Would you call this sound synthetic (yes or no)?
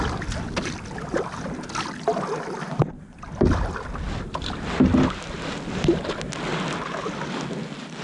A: no